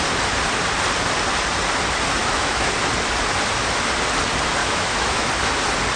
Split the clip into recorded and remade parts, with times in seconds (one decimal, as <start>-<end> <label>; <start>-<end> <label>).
0.0-2.2 recorded; 2.2-2.7 remade; 2.7-4.6 recorded; 4.6-5.3 remade; 5.3-6.0 recorded